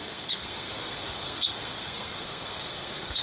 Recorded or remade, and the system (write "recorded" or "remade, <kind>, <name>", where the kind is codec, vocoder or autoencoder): remade, codec, SNAC